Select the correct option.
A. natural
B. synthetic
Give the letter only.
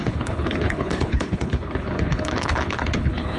B